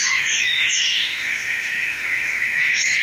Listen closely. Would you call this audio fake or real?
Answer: fake